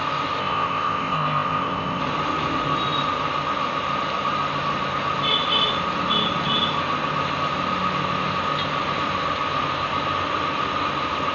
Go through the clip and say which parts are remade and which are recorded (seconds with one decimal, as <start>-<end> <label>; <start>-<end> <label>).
0.0-0.4 recorded; 0.4-2.0 remade; 2.0-11.3 recorded